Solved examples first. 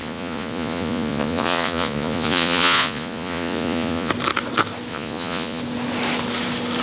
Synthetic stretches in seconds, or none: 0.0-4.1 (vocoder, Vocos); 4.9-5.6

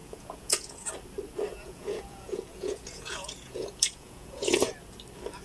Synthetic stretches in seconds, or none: 0.0-0.9 (vocoder, Vocos); 1.5-4.7

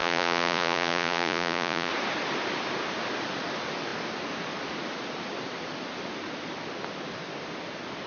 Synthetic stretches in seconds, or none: 0.0-1.9 (vocoder, Vocos)

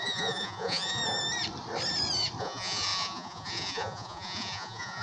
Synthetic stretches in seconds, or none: 0.0-1.0 (vocoder, Vocos); 2.4-5.0

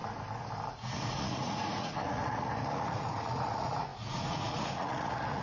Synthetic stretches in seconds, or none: 0.7-5.4 (vocoder, Vocos)

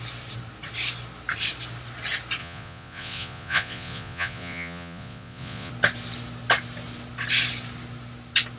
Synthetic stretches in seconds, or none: 2.4-5.7 (vocoder, Vocos)

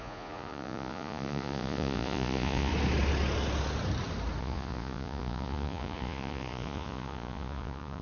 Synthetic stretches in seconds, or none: 0.0-2.7 (vocoder, Vocos); 4.4-8.0

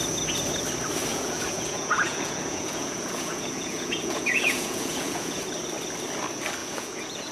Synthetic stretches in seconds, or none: 1.1-5.4 (vocoder, Vocos); 6.6-7.3